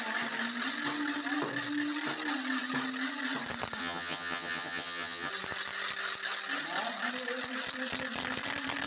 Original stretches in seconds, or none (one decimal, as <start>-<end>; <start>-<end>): 0.0-3.8; 5.3-8.9